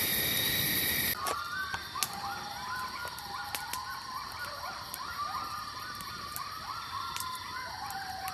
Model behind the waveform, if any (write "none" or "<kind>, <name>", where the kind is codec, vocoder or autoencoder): none